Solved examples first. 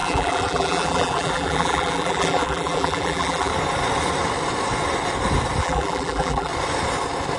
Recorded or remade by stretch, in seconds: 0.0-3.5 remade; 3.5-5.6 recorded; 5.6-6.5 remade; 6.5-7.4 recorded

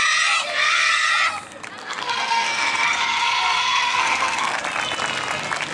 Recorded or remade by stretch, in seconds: 0.0-0.5 recorded; 0.5-1.1 remade; 1.1-1.8 recorded; 1.8-4.6 remade; 4.6-5.7 recorded